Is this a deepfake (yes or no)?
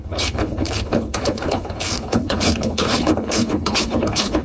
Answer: yes